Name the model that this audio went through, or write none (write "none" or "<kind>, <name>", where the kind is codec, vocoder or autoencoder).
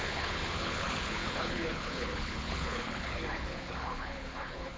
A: codec, HILCodec